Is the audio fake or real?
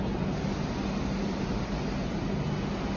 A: real